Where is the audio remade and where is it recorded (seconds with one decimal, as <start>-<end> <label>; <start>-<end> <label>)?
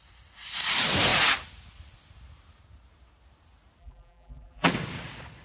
0.0-3.8 recorded; 3.8-4.7 remade; 4.7-5.4 recorded